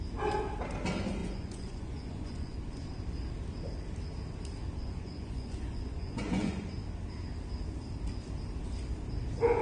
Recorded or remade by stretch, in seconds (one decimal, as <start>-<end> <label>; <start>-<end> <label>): 0.0-1.2 recorded; 1.2-2.6 remade; 2.6-4.8 recorded; 4.8-6.6 remade; 6.6-9.6 recorded